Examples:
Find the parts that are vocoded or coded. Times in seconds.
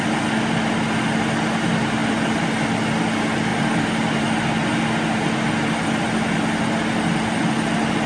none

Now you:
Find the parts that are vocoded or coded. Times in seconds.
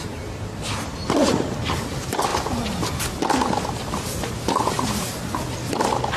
none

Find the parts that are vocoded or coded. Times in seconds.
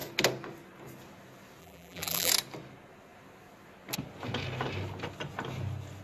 1.6-2.3 (vocoder, BigVGAN v2)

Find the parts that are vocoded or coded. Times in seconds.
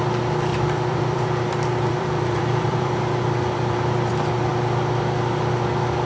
0.5-4.1 (vocoder, BigVGAN v2)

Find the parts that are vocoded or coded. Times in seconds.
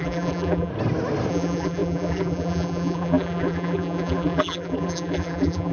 0.0-0.7 (vocoder, BigVGAN v2); 1.3-5.7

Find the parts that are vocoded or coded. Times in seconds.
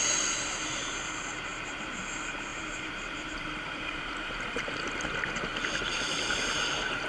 2.5-4.8 (vocoder, BigVGAN v2)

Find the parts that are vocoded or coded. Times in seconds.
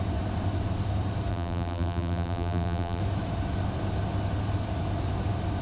1.3-3.0 (vocoder, BigVGAN v2)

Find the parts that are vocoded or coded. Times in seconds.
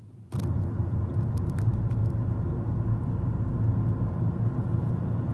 none